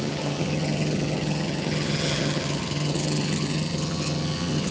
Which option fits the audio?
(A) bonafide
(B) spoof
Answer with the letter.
B